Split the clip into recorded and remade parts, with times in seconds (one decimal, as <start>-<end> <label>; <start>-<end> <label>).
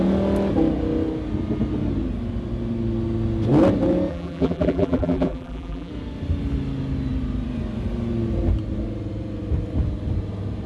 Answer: 0.0-4.1 recorded; 4.1-5.9 remade; 5.9-10.7 recorded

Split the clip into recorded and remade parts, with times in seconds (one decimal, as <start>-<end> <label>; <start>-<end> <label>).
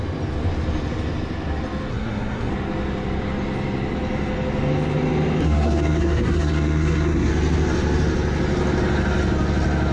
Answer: 0.0-1.9 recorded; 1.9-2.5 remade; 2.5-5.4 recorded; 5.4-7.3 remade; 7.3-9.9 recorded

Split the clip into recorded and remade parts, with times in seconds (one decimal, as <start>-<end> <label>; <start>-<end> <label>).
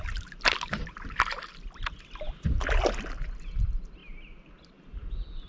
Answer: 0.0-5.5 recorded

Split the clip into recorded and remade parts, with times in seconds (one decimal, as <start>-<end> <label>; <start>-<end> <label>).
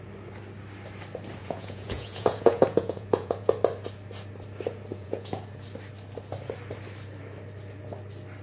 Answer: 0.0-1.4 recorded; 1.4-3.5 remade; 3.5-4.9 recorded; 4.9-5.4 remade; 5.4-8.4 recorded